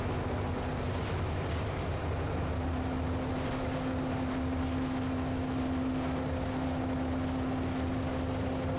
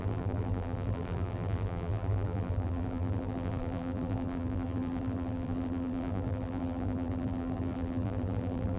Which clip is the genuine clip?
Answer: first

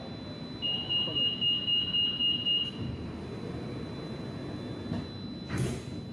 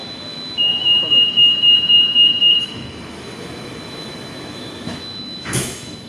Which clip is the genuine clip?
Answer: first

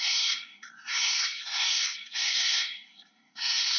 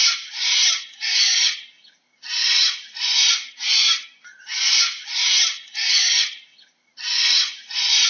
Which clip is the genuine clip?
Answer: second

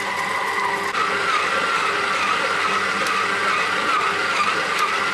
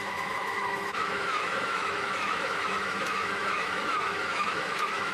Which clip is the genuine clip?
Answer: first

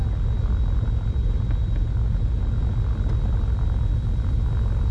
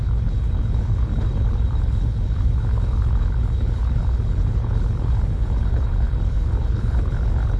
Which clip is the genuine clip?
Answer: first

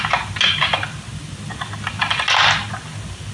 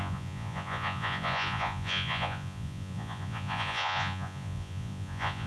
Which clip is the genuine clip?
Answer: first